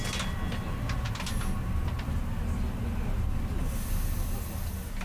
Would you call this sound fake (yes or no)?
no